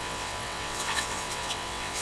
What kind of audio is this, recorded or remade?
remade